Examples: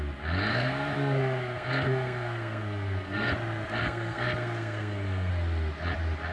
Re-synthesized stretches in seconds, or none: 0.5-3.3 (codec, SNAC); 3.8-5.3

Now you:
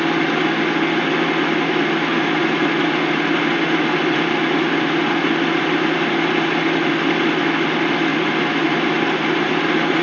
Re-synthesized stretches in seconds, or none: 2.1-6.6 (vocoder, BigVGAN v2); 8.1-9.5